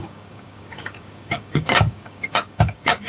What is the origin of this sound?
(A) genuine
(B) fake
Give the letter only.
B